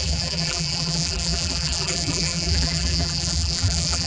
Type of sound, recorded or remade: remade